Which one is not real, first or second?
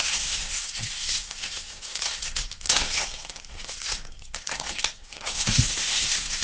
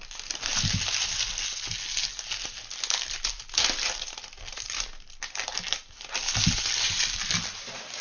first